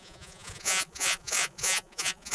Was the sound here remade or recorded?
remade